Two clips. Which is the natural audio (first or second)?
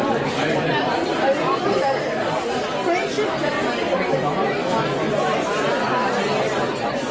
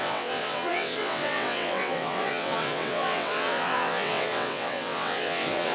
first